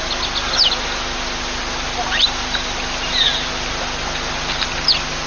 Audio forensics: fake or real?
real